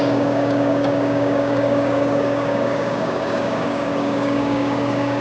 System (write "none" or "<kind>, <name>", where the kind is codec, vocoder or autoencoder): codec, DAC